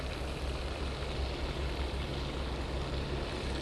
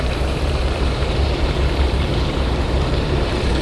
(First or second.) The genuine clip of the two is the first